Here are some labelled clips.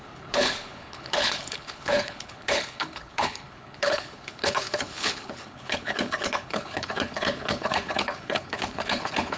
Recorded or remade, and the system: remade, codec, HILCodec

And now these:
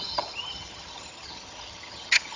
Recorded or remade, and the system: remade, vocoder, HiFi-GAN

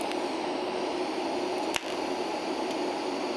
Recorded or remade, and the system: recorded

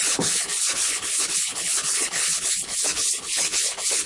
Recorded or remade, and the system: remade, codec, HILCodec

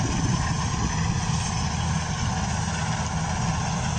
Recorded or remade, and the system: recorded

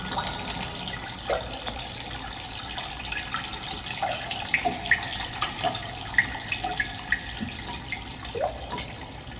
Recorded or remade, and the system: recorded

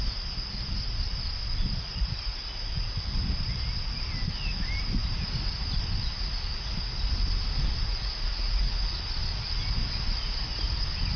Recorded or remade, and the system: recorded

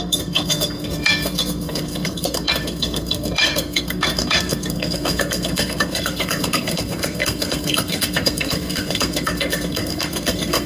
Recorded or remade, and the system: remade, codec, SNAC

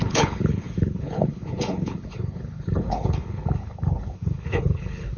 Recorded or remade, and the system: remade, codec, HILCodec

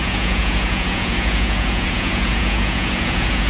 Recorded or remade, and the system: remade, vocoder, Vocos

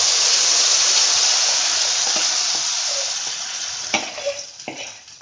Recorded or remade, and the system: recorded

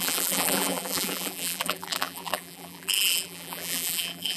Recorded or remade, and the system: remade, vocoder, BigVGAN v2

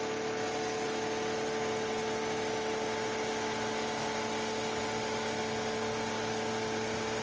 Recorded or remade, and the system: recorded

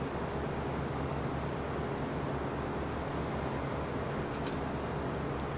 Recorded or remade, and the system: recorded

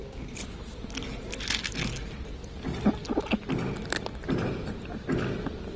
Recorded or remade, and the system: recorded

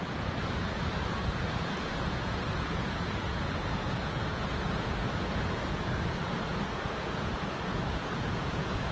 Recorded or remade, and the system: remade, vocoder, Vocos